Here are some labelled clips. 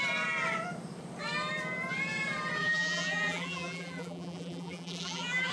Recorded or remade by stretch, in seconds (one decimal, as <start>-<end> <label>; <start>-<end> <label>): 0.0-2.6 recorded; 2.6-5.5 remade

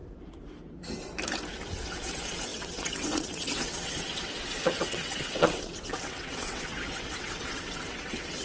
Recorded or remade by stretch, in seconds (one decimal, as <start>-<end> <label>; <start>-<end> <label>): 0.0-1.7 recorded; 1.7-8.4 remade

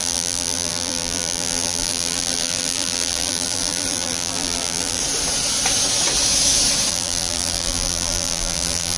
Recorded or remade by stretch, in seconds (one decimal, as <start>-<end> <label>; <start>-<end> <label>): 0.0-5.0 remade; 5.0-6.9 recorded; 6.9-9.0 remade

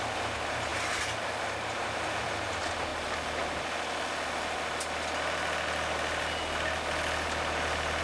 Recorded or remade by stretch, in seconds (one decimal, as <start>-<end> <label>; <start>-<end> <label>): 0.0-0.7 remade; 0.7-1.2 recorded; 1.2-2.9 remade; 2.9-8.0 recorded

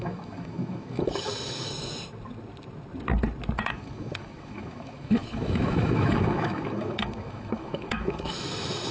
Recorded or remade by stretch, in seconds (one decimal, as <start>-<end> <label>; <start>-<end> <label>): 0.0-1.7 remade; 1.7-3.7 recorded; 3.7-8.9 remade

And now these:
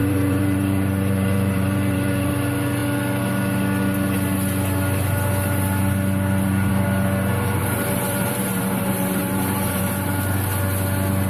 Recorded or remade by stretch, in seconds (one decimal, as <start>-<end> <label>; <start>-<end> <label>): 0.0-2.3 remade; 2.3-7.6 recorded; 7.6-9.8 remade; 9.8-11.3 recorded